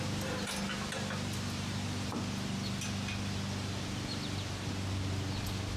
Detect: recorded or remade recorded